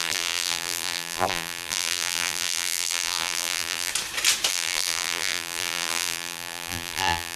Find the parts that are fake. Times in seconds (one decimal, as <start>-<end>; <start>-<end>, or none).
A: 0.0-3.9; 4.5-7.4